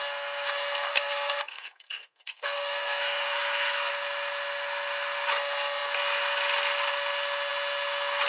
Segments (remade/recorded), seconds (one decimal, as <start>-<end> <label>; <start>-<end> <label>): 0.0-0.9 recorded; 0.9-3.9 remade; 3.9-8.3 recorded